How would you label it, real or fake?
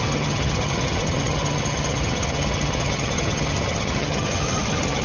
fake